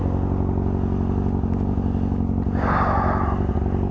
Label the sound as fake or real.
real